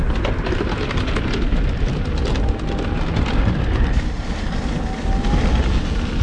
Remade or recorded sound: recorded